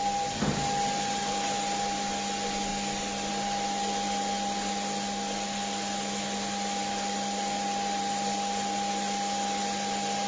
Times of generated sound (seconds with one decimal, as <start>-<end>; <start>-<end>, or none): none

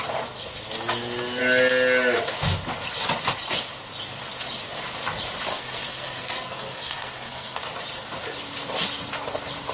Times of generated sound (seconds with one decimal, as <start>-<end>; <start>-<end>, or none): 5.5-7.6

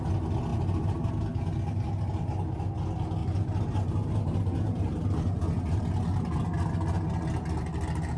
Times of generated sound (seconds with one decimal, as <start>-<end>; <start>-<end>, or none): 0.5-1.1; 3.2-5.8

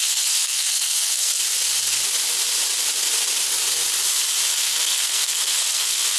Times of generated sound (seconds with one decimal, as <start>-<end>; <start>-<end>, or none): 0.0-1.4; 4.5-6.2